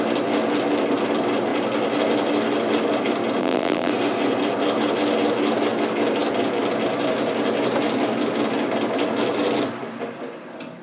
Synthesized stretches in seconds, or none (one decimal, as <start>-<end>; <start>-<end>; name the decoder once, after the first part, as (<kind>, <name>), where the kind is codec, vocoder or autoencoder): 3.4-3.9 (vocoder, BigVGAN v2)